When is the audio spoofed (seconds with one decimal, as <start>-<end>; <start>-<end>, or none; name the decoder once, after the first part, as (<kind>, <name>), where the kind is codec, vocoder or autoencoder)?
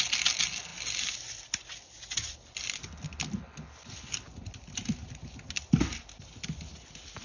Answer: none